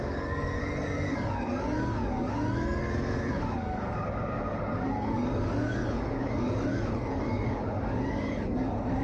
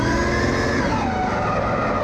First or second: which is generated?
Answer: first